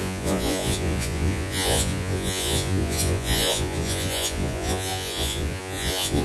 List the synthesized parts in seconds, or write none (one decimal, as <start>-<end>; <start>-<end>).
0.0-6.2